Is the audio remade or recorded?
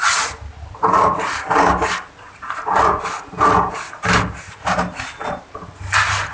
recorded